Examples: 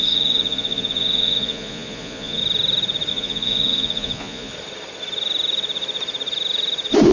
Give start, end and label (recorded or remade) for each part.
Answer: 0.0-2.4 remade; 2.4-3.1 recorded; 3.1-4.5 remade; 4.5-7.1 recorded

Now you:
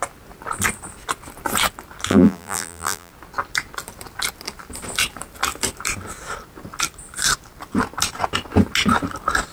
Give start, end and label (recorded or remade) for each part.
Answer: 0.0-2.1 recorded; 2.1-3.1 remade; 3.1-9.5 recorded

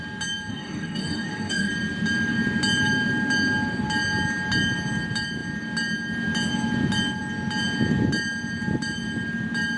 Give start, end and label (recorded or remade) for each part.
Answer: 0.0-0.5 recorded; 0.5-1.7 remade; 1.7-9.8 recorded

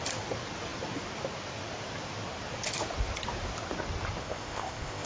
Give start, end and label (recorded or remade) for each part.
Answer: 0.0-4.2 recorded; 4.2-5.1 remade

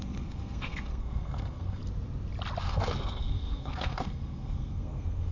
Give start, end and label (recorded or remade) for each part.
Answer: 0.0-1.8 remade; 1.8-2.6 recorded; 2.6-5.3 remade